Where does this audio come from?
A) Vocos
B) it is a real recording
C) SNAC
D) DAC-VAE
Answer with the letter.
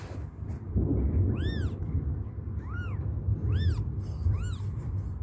B